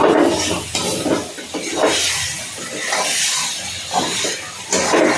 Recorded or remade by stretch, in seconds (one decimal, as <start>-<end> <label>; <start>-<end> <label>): 0.0-5.2 recorded